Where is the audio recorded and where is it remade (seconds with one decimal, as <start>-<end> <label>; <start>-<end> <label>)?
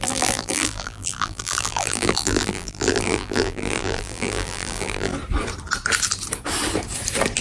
0.0-5.1 remade; 5.1-7.4 recorded